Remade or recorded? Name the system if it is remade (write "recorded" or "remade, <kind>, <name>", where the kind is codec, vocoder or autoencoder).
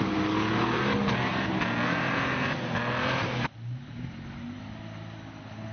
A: recorded